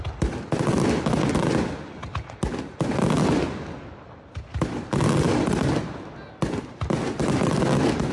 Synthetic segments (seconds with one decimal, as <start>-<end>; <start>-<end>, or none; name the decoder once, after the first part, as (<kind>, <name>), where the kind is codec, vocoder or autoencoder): none